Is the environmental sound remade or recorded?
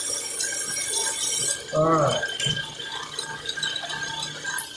recorded